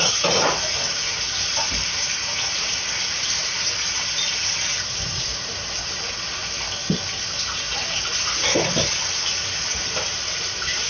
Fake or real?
real